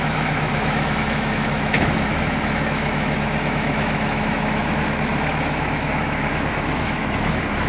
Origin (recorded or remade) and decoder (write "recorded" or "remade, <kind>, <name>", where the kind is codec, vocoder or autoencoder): remade, autoencoder, DAC-VAE